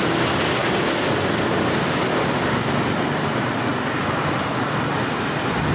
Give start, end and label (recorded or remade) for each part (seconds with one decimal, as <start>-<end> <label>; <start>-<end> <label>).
0.0-5.7 recorded